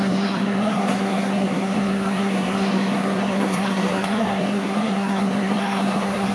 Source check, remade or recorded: remade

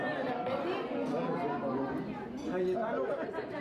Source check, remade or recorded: recorded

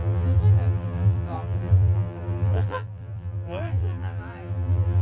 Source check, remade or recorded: remade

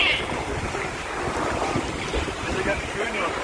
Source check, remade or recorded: remade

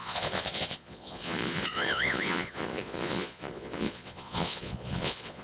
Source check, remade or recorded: remade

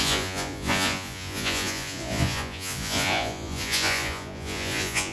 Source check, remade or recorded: remade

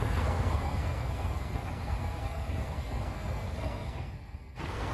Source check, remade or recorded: remade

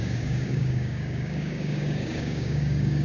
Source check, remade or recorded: remade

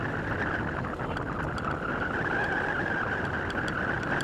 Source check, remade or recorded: recorded